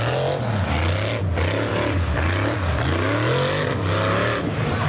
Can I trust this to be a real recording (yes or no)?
yes